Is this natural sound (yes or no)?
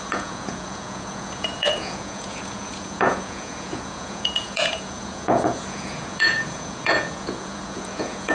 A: no